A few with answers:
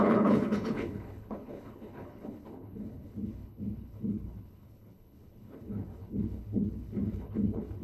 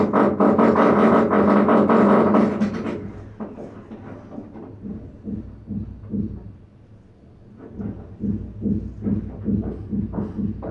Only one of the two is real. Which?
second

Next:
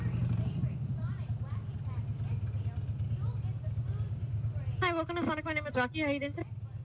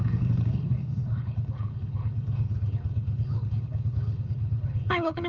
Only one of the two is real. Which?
first